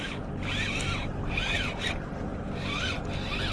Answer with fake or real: real